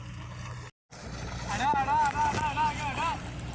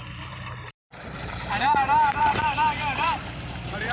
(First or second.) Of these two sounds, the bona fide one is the first